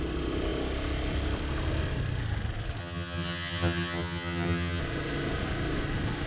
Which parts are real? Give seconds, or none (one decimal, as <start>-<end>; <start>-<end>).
0.0-2.8; 4.8-6.3